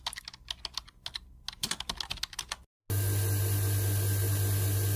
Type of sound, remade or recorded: recorded